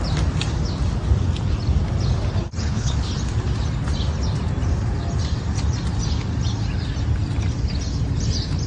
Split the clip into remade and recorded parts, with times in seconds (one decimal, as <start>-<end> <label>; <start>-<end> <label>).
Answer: 0.0-2.6 recorded; 2.6-3.1 remade; 3.1-8.7 recorded

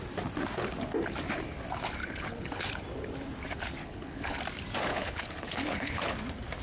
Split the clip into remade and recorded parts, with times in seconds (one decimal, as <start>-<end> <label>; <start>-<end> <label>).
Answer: 0.0-2.0 recorded; 2.0-2.7 remade; 2.7-3.8 recorded; 3.8-4.4 remade; 4.4-4.9 recorded; 4.9-6.1 remade; 6.1-6.6 recorded

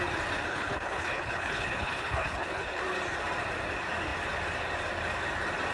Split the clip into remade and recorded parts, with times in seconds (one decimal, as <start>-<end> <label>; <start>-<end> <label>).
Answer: 0.0-0.5 recorded; 0.5-2.8 remade; 2.8-5.7 recorded

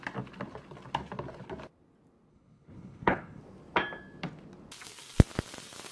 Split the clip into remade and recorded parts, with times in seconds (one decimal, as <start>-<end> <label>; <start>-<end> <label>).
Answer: 0.0-2.3 recorded; 2.3-3.4 remade; 3.4-5.9 recorded